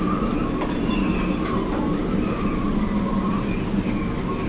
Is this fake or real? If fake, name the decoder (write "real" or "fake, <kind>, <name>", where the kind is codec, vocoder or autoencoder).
real